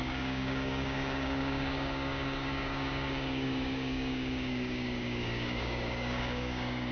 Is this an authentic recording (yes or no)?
no